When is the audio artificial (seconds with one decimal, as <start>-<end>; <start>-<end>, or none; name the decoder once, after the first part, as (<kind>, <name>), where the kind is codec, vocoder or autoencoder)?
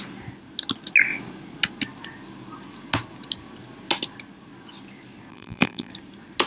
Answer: 5.3-5.9 (vocoder, BigVGAN v2)